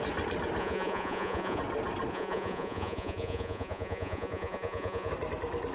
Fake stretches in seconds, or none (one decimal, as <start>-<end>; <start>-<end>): 0.6-1.6; 2.1-5.1